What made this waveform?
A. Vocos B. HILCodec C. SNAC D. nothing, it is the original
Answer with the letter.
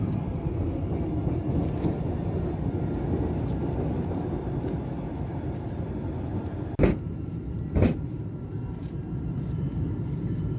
D